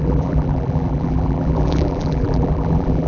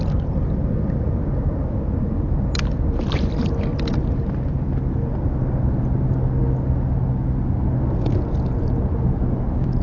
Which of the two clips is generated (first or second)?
first